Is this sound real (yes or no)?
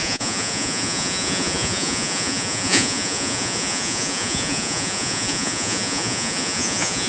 no